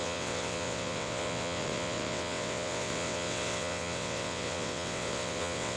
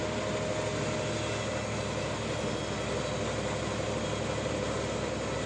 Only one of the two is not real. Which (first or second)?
first